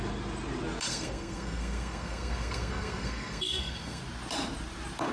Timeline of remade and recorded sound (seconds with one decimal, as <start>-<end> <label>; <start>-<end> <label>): 0.0-0.9 recorded; 0.9-4.0 remade; 4.0-5.1 recorded